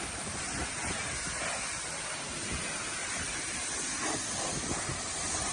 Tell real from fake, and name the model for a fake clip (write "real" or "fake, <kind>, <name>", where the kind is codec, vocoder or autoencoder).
real